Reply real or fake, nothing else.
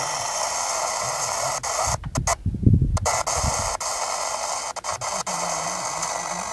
real